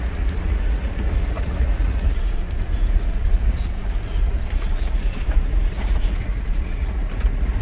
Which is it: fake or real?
fake